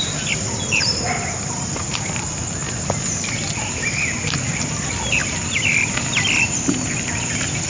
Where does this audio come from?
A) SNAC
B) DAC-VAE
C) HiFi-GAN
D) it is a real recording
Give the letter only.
D